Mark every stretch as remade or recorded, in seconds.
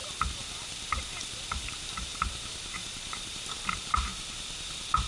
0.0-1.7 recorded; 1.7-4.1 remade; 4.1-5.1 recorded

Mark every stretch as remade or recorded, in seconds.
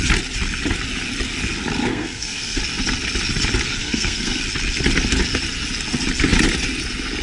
0.0-1.8 recorded; 1.8-2.6 remade; 2.6-3.8 recorded; 3.8-4.4 remade; 4.4-7.2 recorded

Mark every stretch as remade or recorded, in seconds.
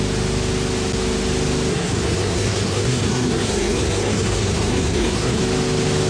0.0-1.7 recorded; 1.7-5.4 remade; 5.4-6.1 recorded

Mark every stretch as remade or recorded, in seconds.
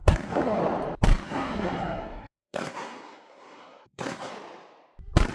0.0-0.6 remade; 0.6-1.1 recorded; 1.1-4.3 remade; 4.3-5.3 recorded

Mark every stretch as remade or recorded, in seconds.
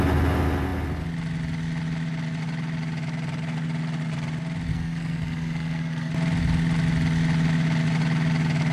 0.0-4.7 recorded; 4.7-6.1 remade; 6.1-8.7 recorded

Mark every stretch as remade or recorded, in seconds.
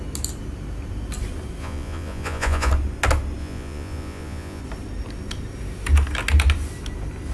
0.0-1.6 recorded; 1.6-2.7 remade; 2.7-3.4 recorded; 3.4-4.6 remade; 4.6-7.3 recorded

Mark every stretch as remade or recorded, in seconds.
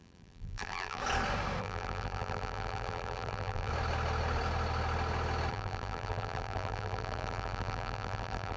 0.0-1.0 remade; 1.0-1.6 recorded; 1.6-3.7 remade; 3.7-5.5 recorded; 5.5-8.6 remade